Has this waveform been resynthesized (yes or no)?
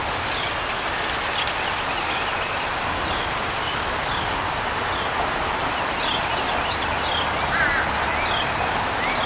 no